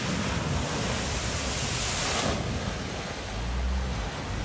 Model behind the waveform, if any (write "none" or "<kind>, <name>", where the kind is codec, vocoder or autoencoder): none